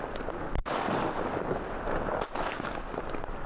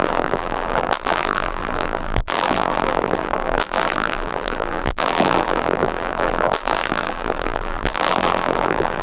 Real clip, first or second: first